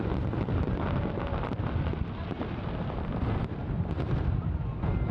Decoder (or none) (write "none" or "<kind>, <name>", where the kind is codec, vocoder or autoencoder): none